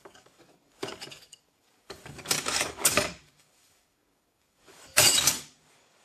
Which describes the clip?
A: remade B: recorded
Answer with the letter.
A